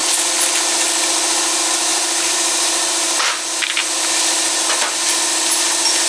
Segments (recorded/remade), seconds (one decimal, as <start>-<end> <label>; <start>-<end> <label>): 0.0-1.9 recorded; 1.9-3.4 remade; 3.4-6.1 recorded